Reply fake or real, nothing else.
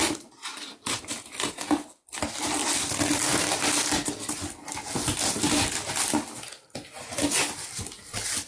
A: real